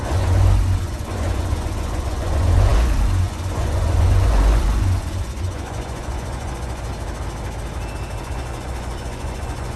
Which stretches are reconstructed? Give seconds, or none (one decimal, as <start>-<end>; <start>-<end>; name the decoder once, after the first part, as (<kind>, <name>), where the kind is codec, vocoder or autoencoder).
0.0-6.9 (vocoder, Vocos); 8.2-9.8